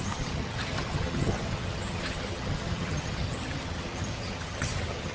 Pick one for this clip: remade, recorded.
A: remade